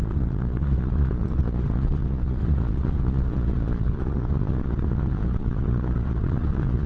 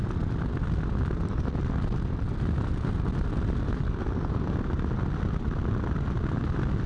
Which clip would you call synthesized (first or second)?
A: first